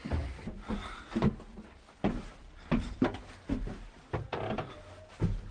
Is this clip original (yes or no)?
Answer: yes